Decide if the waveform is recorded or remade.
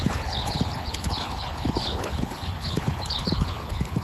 remade